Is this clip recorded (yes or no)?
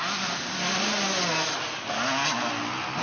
yes